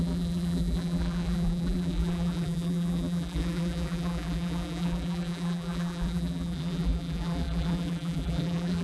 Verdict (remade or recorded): remade